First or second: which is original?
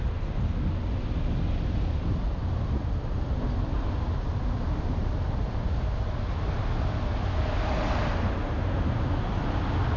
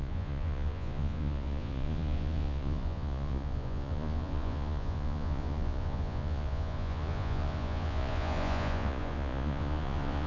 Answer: first